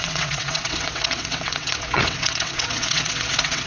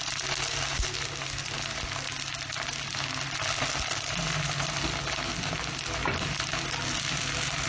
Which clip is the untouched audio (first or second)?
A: second